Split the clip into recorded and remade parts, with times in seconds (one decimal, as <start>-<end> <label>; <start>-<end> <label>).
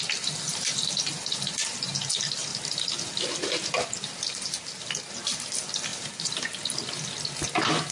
0.0-0.5 recorded; 0.5-1.9 remade; 1.9-5.9 recorded; 5.9-6.6 remade; 6.6-7.9 recorded